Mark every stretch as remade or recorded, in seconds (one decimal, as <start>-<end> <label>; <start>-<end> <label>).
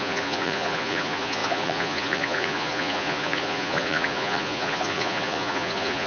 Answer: 0.0-6.1 remade